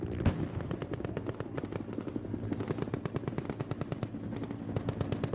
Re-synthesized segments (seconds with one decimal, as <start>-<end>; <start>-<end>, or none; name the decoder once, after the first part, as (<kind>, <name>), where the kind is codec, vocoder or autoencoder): none

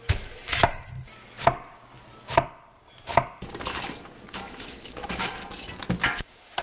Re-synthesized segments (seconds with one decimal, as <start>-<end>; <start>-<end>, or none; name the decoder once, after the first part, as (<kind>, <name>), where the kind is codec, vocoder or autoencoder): 0.0-1.1 (autoencoder, DAC-VAE); 4.3-5.4; 6.1-6.6

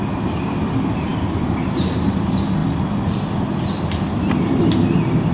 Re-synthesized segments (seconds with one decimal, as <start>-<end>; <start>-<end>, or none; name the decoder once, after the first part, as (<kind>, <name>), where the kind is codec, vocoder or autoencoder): none

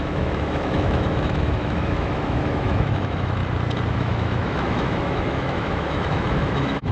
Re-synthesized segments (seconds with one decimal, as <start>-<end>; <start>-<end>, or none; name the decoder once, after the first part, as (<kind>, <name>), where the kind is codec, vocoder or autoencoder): 0.0-3.4 (autoencoder, DAC-VAE); 3.9-6.9